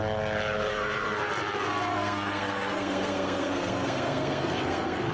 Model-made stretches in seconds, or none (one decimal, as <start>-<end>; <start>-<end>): 0.7-1.3; 1.9-5.1